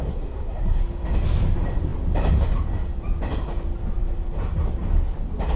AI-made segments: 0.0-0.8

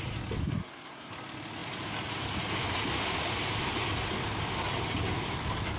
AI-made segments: 0.4-1.1

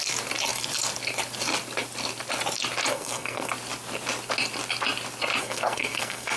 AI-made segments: 2.9-3.5; 5.4-6.4

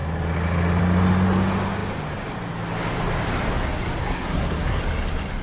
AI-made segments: 4.0-4.8

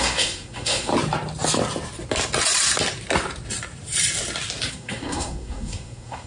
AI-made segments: 0.0-0.9; 4.7-6.3

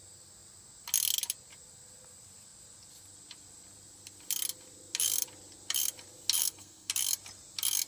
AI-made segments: 6.4-6.9

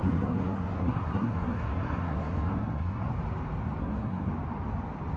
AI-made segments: 0.0-3.1; 3.8-4.3